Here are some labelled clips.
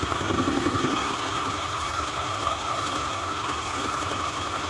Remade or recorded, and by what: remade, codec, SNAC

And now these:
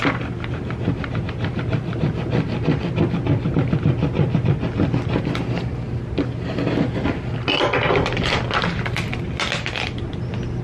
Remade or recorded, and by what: recorded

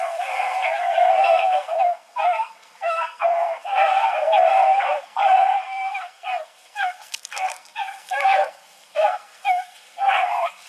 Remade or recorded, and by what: remade, codec, SNAC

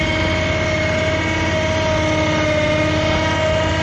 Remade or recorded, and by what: recorded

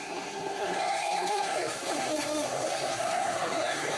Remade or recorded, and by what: remade, codec, SNAC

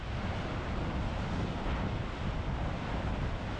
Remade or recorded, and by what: recorded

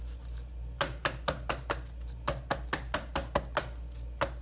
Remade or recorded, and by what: recorded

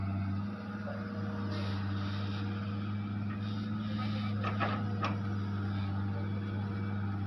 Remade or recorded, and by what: recorded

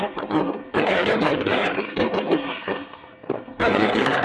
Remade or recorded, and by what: remade, codec, SNAC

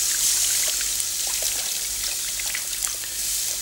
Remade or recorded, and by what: recorded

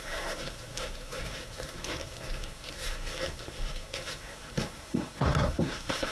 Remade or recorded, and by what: remade, codec, SNAC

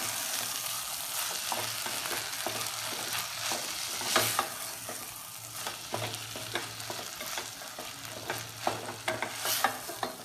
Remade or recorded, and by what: recorded